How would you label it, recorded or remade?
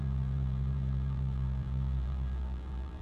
remade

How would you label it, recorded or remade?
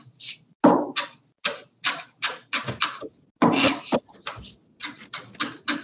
recorded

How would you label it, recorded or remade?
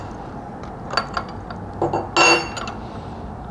recorded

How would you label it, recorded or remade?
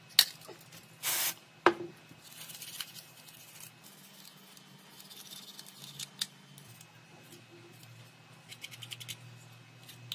recorded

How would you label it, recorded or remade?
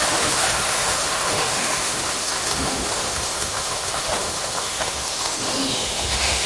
remade